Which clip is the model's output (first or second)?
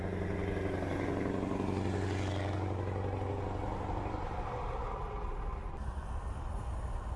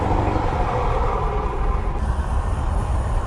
second